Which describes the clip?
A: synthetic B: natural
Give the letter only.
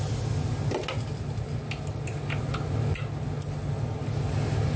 B